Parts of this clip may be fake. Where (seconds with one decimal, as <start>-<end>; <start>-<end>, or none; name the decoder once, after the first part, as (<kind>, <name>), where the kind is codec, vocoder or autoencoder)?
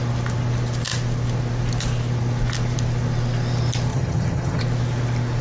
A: 3.9-4.6 (vocoder, HiFi-GAN)